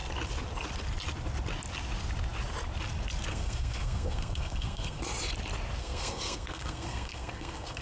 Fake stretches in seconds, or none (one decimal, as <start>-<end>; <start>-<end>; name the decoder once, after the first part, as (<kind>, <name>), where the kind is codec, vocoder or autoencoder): 3.3-5.0 (codec, SNAC); 5.8-7.8